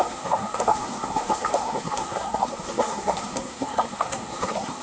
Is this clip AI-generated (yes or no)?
yes